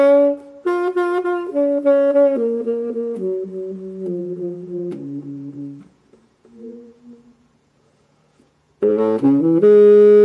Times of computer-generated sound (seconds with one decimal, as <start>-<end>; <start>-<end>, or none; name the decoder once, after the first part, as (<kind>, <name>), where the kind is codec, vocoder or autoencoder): 4.2-8.9 (vocoder, Vocos)